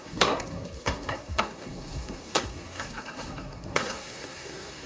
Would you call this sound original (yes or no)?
no